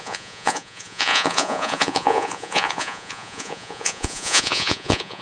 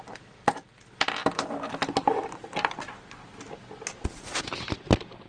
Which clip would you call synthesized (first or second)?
first